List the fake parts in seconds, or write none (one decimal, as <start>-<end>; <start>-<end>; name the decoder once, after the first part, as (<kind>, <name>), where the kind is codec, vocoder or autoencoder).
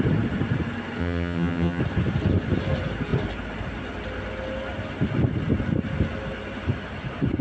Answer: 1.0-1.8 (vocoder, HiFi-GAN)